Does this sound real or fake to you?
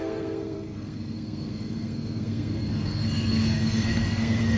fake